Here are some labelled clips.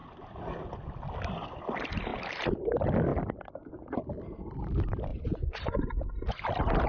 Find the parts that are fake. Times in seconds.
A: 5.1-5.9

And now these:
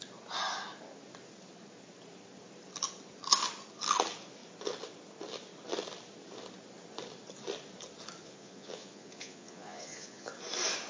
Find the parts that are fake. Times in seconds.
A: 8.2-10.3

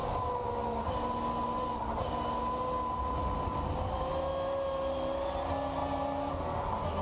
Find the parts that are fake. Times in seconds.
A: none

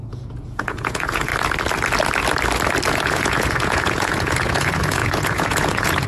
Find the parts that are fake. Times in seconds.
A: 0.0-1.3; 2.9-6.1

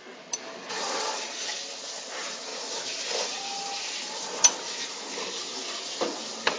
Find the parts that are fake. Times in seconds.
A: 1.1-1.6

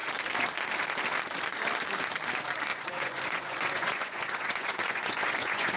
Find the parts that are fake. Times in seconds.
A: 2.7-5.8

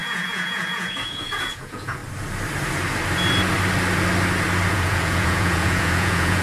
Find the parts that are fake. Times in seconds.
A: 0.0-2.0; 4.7-6.4

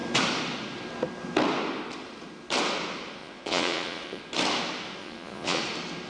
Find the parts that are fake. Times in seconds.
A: 3.2-4.2; 5.0-5.6